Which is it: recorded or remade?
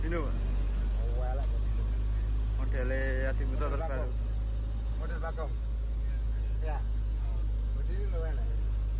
recorded